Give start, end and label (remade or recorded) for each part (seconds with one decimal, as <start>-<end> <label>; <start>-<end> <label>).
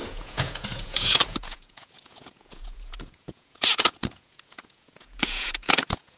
0.0-6.2 remade